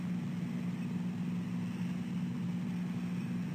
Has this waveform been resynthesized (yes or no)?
no